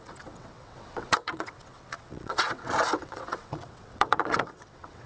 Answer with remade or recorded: remade